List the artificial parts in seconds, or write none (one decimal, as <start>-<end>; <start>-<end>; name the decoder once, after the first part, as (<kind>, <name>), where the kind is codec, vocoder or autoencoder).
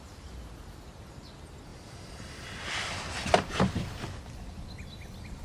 none